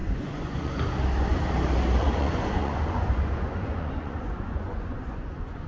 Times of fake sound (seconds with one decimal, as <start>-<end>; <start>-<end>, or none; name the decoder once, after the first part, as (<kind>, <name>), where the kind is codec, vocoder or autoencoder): 0.0-0.7 (vocoder, Vocos); 2.0-5.7